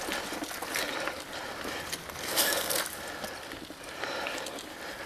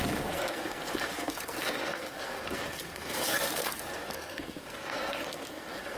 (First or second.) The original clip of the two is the first